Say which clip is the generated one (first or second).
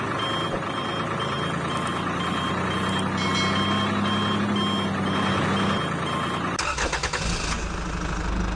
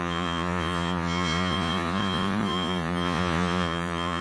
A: second